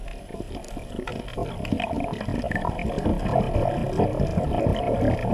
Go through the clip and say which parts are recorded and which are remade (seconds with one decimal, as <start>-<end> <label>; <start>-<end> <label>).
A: 0.0-5.3 recorded